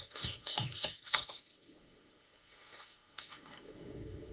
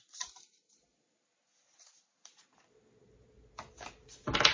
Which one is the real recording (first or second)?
second